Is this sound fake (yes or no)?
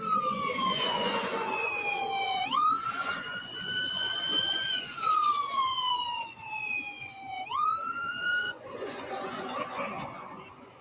yes